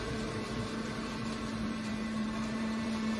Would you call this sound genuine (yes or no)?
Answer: no